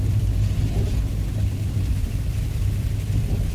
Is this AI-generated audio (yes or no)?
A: no